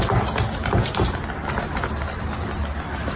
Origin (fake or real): real